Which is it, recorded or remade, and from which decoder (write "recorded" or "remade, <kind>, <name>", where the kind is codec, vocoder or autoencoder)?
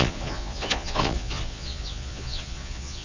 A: remade, vocoder, Vocos